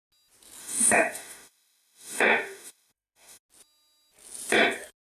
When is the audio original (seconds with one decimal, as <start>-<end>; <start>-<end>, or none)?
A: 0.0-0.6; 3.4-5.0